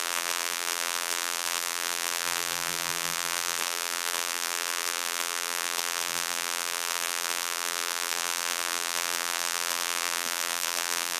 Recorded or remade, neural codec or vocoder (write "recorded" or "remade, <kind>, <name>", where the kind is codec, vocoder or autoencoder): remade, vocoder, BigVGAN v2